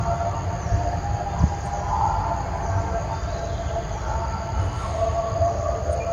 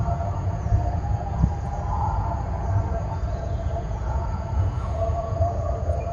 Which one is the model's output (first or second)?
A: second